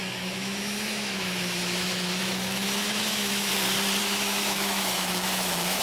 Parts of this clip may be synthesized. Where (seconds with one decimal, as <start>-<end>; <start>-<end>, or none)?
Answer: 0.0-3.5; 4.0-5.8